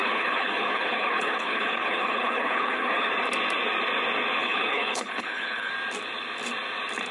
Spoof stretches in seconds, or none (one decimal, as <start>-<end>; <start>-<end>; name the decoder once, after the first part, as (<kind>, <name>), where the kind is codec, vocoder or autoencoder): 0.0-3.1 (codec, HILCodec); 4.4-5.7